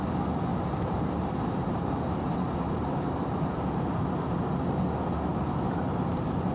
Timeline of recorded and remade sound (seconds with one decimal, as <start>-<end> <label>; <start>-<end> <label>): 0.0-0.5 recorded; 0.5-4.4 remade; 4.4-5.3 recorded; 5.3-5.9 remade; 5.9-6.5 recorded